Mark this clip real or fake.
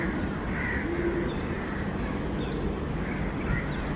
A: real